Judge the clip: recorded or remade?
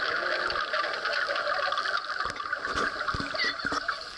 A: recorded